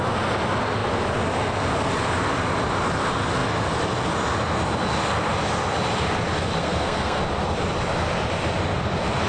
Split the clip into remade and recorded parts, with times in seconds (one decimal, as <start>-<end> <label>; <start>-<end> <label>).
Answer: 0.0-6.6 recorded; 6.6-7.2 remade; 7.2-9.3 recorded